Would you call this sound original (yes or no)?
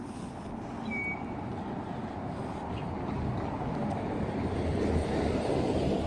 yes